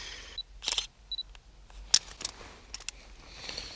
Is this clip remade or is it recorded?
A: recorded